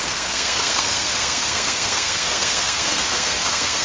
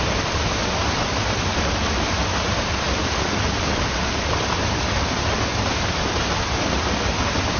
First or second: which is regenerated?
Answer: first